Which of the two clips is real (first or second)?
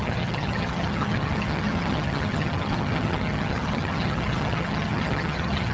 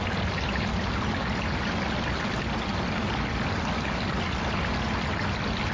second